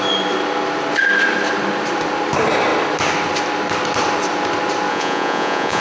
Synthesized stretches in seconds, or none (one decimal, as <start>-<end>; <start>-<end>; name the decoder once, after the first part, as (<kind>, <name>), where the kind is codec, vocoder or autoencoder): 4.9-5.8 (vocoder, Vocos)